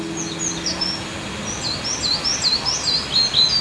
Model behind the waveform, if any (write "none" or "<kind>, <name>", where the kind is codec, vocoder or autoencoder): none